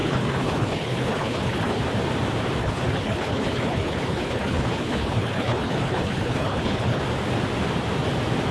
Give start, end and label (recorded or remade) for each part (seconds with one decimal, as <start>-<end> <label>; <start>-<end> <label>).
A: 0.0-1.8 remade; 1.8-2.6 recorded; 2.6-7.0 remade; 7.0-8.5 recorded